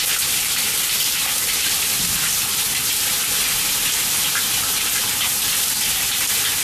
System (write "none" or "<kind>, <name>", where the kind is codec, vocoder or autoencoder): none